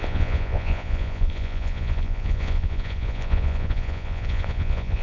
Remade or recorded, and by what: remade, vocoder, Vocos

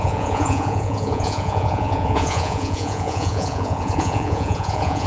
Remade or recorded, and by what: remade, vocoder, Vocos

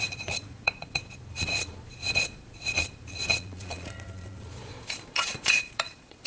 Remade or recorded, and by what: remade, vocoder, Vocos